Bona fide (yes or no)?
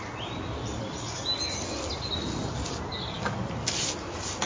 yes